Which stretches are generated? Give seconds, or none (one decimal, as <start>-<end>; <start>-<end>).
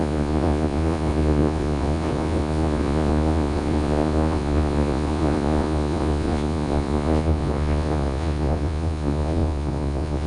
0.0-10.3